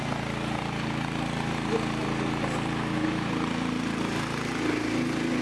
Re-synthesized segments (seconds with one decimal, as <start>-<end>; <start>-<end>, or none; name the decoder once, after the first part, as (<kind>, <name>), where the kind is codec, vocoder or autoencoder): 2.0-4.5 (vocoder, BigVGAN v2)

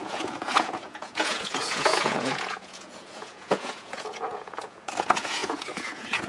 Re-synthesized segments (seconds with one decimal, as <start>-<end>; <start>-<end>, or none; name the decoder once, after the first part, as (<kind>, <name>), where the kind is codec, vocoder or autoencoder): 0.0-6.3 (vocoder, Vocos)

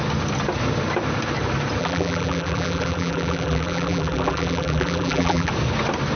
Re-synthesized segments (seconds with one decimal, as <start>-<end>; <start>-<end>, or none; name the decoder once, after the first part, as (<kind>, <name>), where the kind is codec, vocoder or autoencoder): 1.8-5.5 (vocoder, BigVGAN v2)

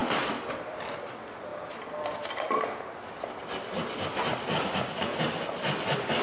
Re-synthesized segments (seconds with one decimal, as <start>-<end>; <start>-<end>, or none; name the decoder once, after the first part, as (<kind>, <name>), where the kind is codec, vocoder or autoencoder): none

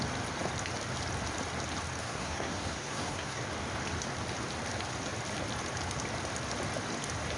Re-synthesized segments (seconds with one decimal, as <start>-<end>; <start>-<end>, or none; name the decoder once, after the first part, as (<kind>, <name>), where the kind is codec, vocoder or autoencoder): 2.0-3.4 (codec, SNAC)

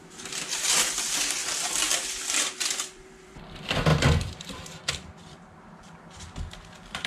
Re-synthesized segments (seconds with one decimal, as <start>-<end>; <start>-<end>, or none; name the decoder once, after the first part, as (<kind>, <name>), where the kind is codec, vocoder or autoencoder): 0.0-1.4 (vocoder, BigVGAN v2); 2.1-7.1